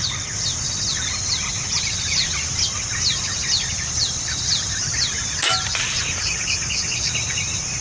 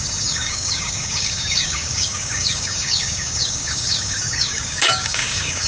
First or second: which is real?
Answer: first